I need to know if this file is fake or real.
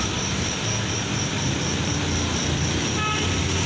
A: real